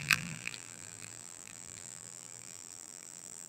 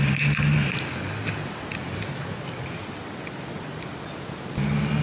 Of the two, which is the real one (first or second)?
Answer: second